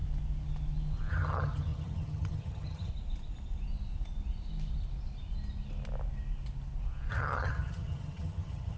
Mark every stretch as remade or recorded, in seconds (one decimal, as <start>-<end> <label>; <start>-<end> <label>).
0.0-1.1 recorded; 1.1-2.9 remade; 2.9-7.1 recorded; 7.1-8.8 remade